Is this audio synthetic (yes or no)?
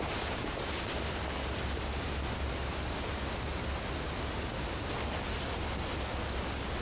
no